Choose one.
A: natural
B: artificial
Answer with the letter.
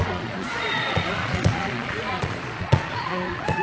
B